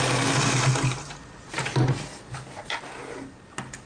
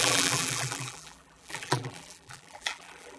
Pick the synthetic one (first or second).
second